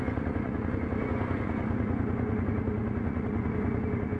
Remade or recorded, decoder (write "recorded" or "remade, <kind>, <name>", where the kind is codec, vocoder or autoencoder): remade, vocoder, Vocos